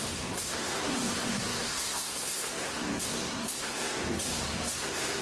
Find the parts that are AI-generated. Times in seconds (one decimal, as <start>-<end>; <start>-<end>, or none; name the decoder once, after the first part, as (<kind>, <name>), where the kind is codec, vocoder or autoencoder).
0.0-5.2 (codec, SNAC)